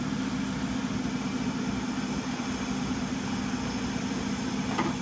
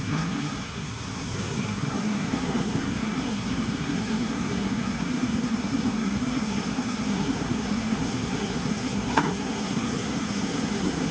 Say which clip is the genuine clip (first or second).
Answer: first